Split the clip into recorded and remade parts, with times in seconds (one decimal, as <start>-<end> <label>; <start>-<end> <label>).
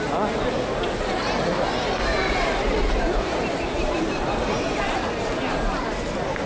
0.0-1.5 recorded; 1.5-4.4 remade; 4.4-6.5 recorded